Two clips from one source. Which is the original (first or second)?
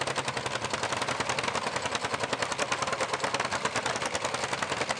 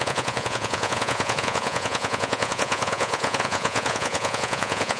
first